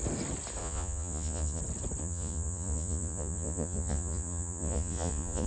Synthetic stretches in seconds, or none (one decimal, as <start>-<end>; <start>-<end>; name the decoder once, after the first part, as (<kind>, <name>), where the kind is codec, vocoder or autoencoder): 0.6-1.6 (vocoder, Vocos); 2.0-5.5